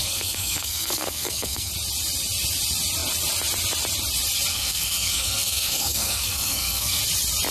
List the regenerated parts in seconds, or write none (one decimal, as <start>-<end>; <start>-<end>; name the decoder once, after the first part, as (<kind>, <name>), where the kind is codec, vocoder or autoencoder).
0.0-1.7 (codec, SNAC); 4.5-7.0